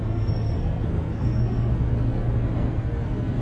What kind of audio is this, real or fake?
fake